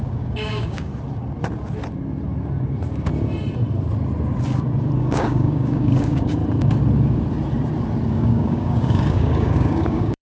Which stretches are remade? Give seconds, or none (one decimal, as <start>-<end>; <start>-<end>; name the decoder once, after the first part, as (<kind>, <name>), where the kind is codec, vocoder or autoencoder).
0.0-0.9 (codec, DAC); 5.0-6.4; 8.1-10.2